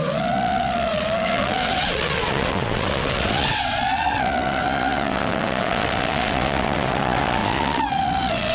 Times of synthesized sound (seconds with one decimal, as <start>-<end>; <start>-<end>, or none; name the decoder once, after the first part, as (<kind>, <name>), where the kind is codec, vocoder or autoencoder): 0.0-8.5 (vocoder, WaveNeXt)